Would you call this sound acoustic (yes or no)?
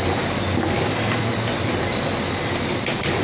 yes